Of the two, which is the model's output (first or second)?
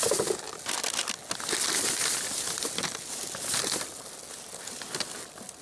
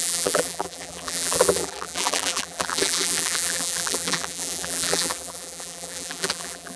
second